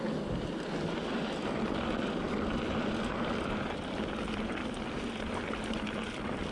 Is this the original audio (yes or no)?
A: yes